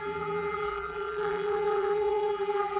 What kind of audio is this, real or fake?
fake